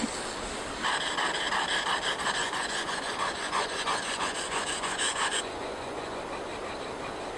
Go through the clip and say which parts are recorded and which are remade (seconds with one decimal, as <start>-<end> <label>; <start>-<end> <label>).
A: 0.0-2.4 recorded; 2.4-6.2 remade; 6.2-7.4 recorded